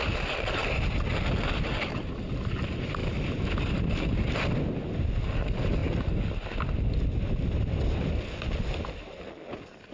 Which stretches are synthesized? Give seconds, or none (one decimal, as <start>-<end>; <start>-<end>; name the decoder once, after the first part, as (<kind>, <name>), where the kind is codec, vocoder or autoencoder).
none